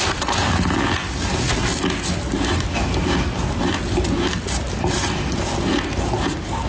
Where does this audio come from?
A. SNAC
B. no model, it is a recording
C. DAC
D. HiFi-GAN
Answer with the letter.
B